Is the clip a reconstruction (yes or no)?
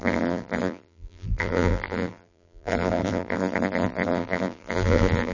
yes